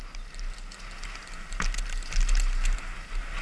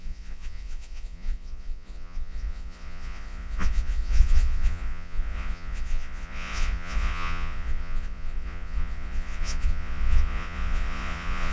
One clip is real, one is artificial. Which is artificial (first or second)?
second